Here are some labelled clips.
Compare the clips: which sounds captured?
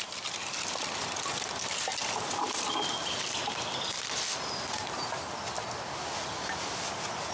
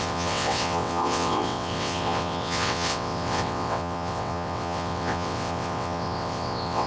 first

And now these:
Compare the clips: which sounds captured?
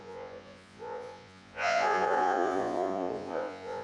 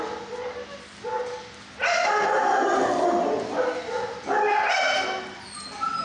second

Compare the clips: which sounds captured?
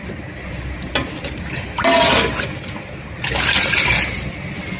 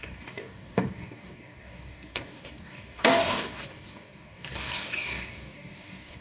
first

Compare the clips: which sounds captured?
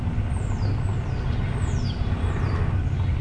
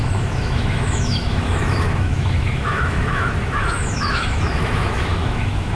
first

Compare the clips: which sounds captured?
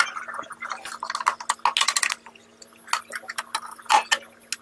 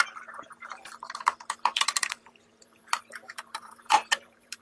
first